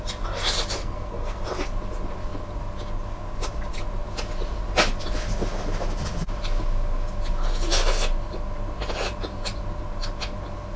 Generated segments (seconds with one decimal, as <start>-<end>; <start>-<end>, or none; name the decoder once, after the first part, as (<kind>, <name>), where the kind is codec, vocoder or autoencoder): 0.8-1.4 (codec, SNAC)